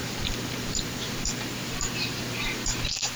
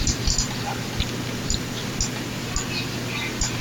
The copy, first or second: first